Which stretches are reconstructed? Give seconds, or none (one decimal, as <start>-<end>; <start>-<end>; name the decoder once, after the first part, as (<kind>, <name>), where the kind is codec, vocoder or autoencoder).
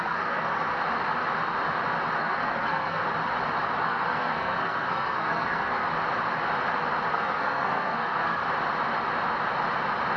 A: 0.0-0.7 (codec, SNAC); 2.2-3.0; 3.8-5.9; 7.1-8.4